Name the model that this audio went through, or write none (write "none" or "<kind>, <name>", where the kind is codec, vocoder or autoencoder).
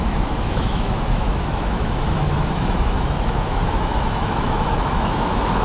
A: autoencoder, DAC-VAE